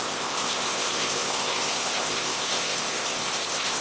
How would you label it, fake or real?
fake